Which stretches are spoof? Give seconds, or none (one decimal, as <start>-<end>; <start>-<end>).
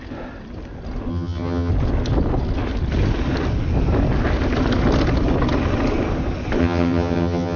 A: 1.1-1.7; 6.6-7.6